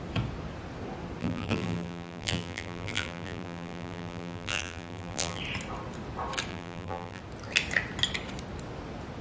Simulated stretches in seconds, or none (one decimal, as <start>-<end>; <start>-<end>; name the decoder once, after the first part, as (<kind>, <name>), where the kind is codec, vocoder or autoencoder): 1.2-5.4 (vocoder, BigVGAN v2); 6.5-7.2